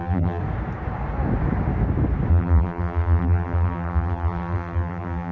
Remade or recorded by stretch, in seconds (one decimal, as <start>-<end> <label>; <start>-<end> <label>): 0.0-0.4 remade; 0.4-2.3 recorded; 2.3-5.3 remade